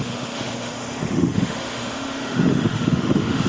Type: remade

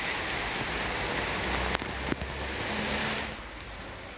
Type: recorded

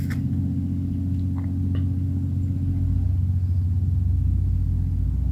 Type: recorded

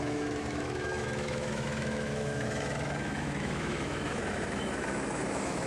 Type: remade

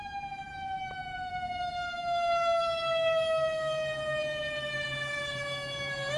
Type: remade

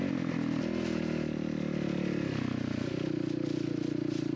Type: recorded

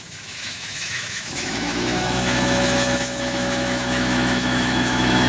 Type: remade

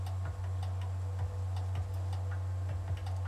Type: recorded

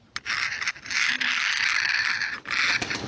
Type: recorded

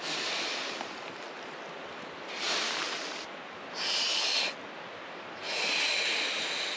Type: recorded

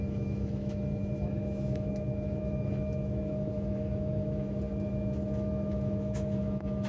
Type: remade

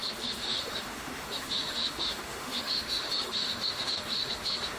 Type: remade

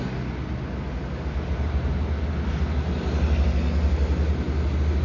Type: recorded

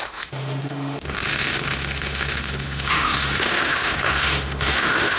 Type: remade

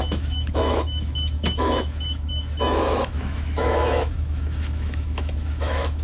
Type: remade